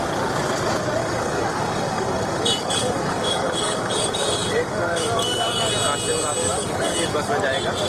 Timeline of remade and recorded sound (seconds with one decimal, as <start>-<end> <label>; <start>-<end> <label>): 0.0-1.0 recorded; 1.0-5.7 remade; 5.7-6.4 recorded; 6.4-7.3 remade; 7.3-7.9 recorded

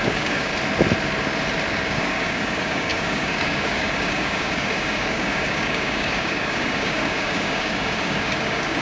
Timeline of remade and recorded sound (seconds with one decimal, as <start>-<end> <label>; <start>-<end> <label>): 0.0-0.5 remade; 0.5-1.7 recorded; 1.7-8.8 remade

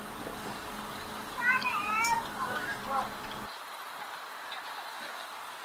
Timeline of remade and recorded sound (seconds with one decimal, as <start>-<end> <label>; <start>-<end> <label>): 0.0-2.8 remade; 2.8-4.9 recorded; 4.9-5.6 remade

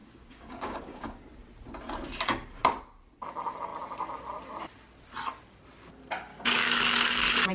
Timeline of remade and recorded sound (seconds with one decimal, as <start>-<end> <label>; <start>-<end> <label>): 0.0-1.2 remade; 1.2-6.3 recorded; 6.3-7.5 remade

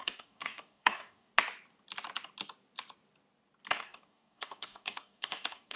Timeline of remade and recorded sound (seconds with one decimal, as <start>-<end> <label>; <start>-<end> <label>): 0.0-1.3 remade; 1.3-3.7 recorded; 3.7-5.8 remade